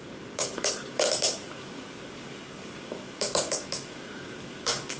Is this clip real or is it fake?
fake